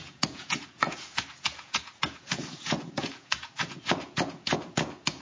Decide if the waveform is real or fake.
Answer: fake